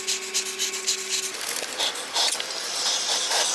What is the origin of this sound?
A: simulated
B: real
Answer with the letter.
B